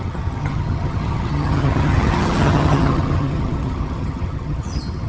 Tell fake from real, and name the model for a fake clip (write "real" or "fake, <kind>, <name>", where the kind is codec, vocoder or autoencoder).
fake, vocoder, HiFi-GAN